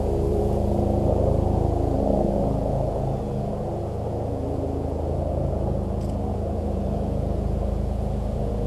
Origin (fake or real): fake